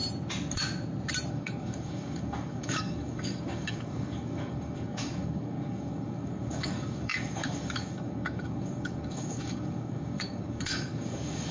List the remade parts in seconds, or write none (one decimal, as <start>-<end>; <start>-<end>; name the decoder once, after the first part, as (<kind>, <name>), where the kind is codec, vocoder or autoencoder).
1.3-11.5 (codec, DAC)